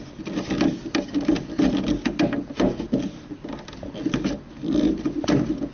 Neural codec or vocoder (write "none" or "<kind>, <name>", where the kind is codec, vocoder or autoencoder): none